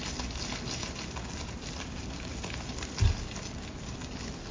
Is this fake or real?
real